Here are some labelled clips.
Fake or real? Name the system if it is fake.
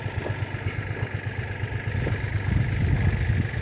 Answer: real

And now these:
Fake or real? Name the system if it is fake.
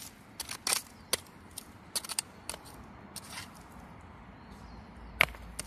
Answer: real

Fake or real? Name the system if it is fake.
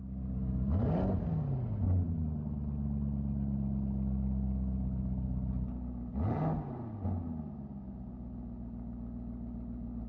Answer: real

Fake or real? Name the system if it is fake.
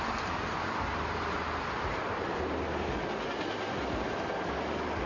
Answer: real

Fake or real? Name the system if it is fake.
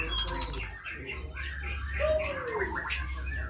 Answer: real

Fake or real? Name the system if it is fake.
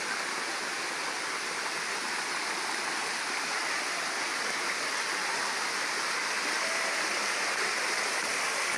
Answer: real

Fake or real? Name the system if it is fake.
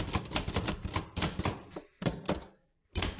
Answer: fake, vocoder, BigVGAN v2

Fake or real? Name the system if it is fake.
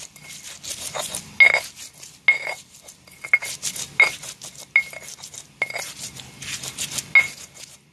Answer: real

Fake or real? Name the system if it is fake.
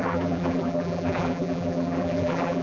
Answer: fake, vocoder, BigVGAN v2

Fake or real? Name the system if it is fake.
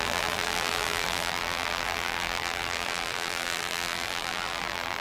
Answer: fake, vocoder, BigVGAN v2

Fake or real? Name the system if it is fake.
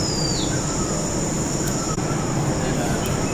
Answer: real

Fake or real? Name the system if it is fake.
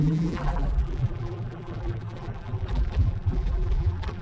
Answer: fake, vocoder, BigVGAN v2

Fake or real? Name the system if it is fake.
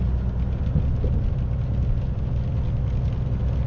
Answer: real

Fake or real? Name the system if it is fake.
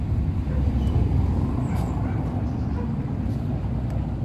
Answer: real